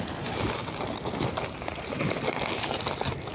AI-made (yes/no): no